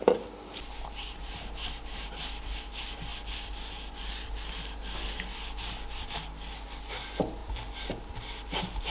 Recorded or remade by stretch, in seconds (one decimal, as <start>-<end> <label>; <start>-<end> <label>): 0.0-8.9 recorded